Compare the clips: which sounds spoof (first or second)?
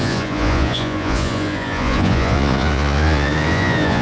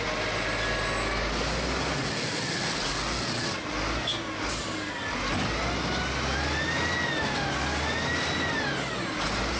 first